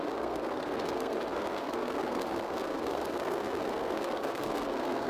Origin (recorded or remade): remade